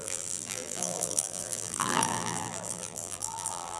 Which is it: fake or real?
fake